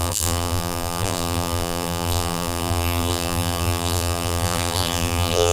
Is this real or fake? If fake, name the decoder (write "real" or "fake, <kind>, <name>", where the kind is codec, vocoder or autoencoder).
fake, vocoder, BigVGAN v2